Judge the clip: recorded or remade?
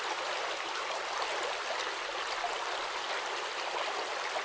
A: recorded